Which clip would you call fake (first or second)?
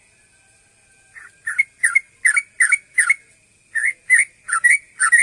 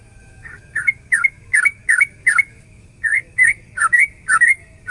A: second